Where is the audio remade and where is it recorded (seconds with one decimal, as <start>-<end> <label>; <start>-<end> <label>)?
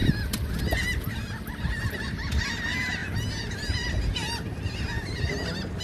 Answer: 0.0-0.6 remade; 0.6-5.8 recorded